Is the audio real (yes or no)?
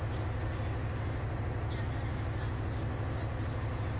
yes